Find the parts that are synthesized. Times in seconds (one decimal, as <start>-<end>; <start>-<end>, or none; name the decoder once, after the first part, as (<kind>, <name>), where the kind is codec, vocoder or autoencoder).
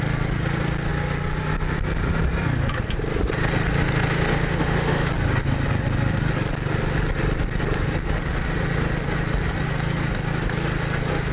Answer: 4.3-5.1 (autoencoder, DAC-VAE)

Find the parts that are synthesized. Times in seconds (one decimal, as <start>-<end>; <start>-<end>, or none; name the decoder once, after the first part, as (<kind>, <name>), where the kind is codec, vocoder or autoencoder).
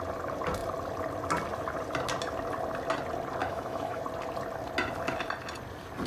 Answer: 3.4-4.0 (autoencoder, DAC-VAE)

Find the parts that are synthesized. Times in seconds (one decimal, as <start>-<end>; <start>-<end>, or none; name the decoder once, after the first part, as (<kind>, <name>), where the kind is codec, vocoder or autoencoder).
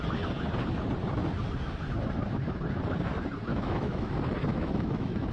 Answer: 3.5-4.1 (autoencoder, DAC-VAE); 4.5-5.3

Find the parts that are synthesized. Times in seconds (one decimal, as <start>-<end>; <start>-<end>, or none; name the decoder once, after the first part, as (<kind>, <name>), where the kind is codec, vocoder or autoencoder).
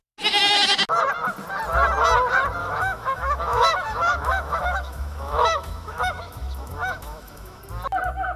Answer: 2.6-7.6 (autoencoder, DAC-VAE)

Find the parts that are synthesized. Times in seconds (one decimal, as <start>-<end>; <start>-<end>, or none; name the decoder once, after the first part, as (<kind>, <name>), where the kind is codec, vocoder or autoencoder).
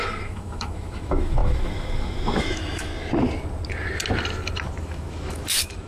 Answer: 0.0-2.9 (autoencoder, DAC-VAE); 4.8-5.9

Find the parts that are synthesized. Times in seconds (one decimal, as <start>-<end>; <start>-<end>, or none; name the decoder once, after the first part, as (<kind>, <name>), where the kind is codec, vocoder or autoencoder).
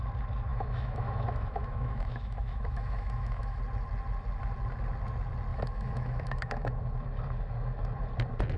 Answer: 0.5-3.6 (autoencoder, DAC-VAE); 5.5-6.7